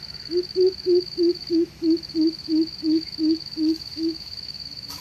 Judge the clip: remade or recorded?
remade